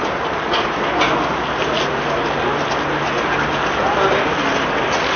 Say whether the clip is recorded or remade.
recorded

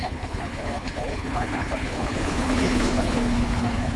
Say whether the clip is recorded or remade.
remade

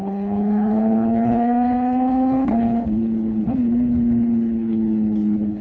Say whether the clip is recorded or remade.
remade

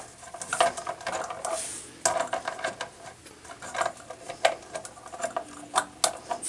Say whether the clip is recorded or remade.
recorded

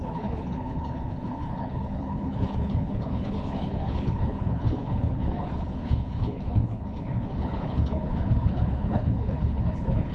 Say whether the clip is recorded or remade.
remade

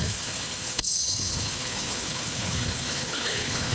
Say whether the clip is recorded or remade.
remade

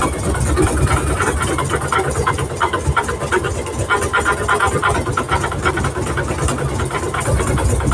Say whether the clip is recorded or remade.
recorded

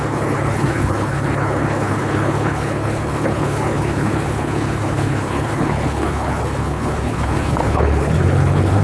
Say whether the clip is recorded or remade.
remade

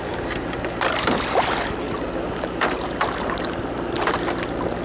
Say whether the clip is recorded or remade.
recorded